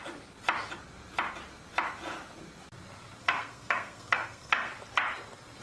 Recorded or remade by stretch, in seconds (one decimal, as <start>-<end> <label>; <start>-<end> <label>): 0.0-3.2 recorded; 3.2-4.7 remade; 4.7-5.6 recorded